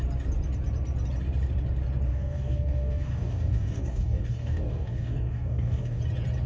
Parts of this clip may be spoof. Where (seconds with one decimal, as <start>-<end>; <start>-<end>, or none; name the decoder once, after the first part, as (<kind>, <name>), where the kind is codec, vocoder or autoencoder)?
2.1-6.0 (codec, DAC)